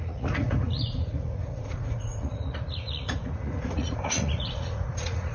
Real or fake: fake